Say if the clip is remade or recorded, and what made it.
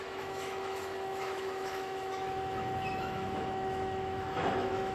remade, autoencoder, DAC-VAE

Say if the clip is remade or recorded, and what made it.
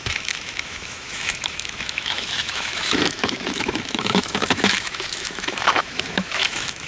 remade, autoencoder, DAC-VAE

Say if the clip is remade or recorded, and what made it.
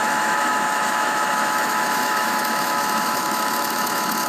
remade, autoencoder, DAC-VAE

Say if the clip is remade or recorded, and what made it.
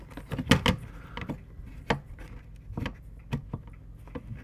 recorded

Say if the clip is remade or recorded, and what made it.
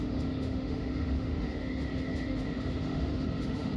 remade, autoencoder, DAC-VAE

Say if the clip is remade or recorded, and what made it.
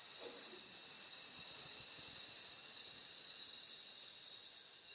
recorded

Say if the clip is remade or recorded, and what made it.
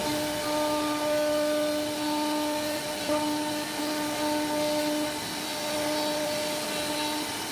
recorded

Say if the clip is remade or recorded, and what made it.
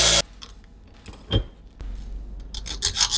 recorded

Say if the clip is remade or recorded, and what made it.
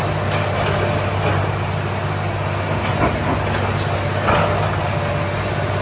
recorded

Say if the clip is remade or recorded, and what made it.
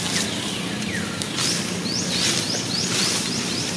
recorded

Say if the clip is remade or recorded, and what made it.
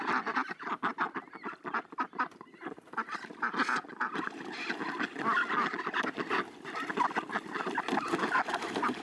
recorded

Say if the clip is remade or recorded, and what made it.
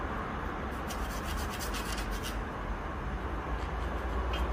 recorded